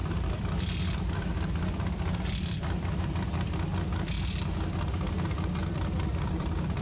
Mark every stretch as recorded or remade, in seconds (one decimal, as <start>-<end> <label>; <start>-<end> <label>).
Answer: 0.0-3.0 remade; 3.0-5.6 recorded; 5.6-6.8 remade